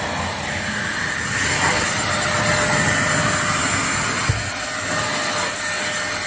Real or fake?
real